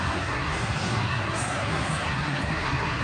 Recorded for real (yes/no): no